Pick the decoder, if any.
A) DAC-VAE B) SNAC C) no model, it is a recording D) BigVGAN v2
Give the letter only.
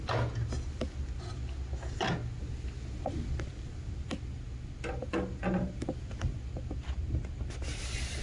C